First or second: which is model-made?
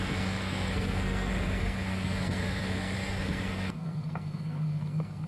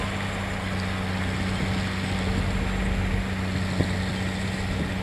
first